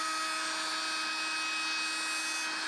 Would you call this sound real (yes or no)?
yes